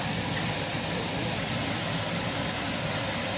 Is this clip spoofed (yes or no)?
no